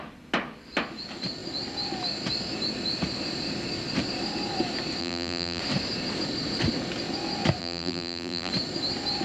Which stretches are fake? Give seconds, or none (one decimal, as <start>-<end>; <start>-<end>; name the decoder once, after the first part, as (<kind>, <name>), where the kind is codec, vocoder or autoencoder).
5.0-5.6 (vocoder, BigVGAN v2); 7.6-8.5